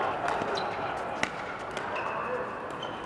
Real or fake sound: real